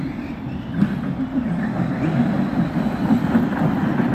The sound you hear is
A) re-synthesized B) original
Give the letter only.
B